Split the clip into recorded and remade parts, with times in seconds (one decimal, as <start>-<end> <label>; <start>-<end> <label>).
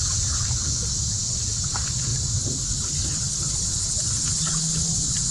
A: 0.0-2.1 remade; 2.1-5.3 recorded